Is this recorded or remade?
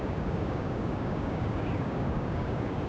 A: remade